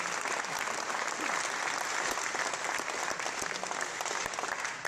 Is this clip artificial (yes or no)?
no